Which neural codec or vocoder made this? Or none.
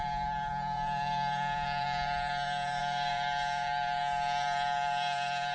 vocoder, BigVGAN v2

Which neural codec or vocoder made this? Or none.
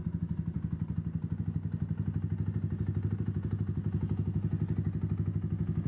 none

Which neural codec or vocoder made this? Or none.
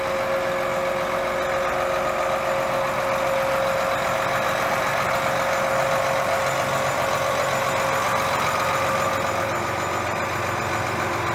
none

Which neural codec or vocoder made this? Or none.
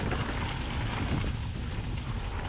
none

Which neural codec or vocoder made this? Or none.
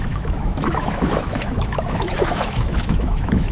autoencoder, DAC-VAE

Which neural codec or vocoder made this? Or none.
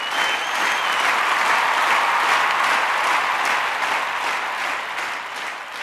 none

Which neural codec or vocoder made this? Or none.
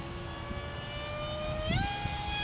none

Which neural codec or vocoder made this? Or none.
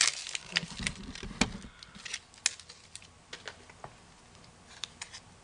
none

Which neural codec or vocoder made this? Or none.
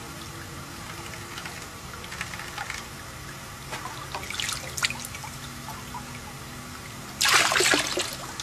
none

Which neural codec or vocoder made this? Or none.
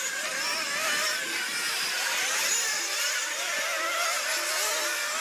none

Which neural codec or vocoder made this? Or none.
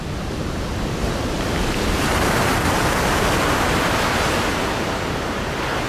none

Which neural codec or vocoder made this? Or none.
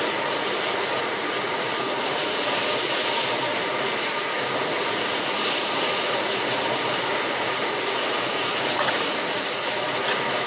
vocoder, Vocos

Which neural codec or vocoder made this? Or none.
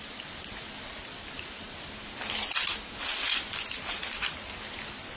none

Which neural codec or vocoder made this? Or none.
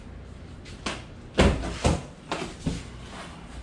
none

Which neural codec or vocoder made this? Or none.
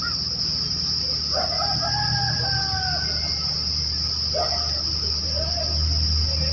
none